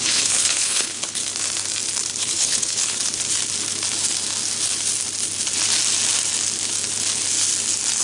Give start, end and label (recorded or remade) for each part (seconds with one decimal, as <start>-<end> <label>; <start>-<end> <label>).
0.0-1.2 remade; 1.2-2.2 recorded; 2.2-3.1 remade; 3.1-8.0 recorded